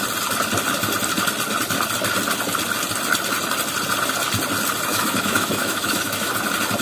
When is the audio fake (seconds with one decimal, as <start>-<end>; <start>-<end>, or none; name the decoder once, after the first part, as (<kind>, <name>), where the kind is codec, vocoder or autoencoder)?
4.9-6.3 (autoencoder, DAC-VAE)